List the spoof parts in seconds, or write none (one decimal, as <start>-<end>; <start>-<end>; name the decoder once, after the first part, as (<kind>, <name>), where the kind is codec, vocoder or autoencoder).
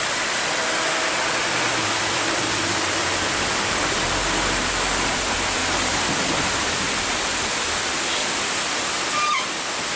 0.0-5.6 (vocoder, BigVGAN v2); 6.3-8.2; 8.9-10.0